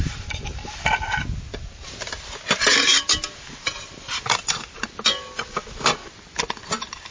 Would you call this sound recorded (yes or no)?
yes